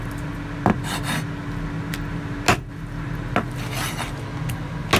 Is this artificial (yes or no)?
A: no